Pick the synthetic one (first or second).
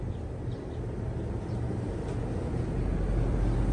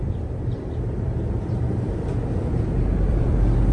second